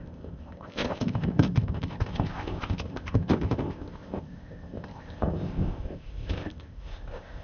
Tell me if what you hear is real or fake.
fake